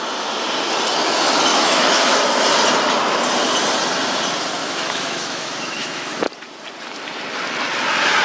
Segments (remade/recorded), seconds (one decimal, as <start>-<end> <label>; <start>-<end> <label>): 0.0-1.5 recorded; 1.5-2.2 remade; 2.2-4.6 recorded; 4.6-6.1 remade; 6.1-8.2 recorded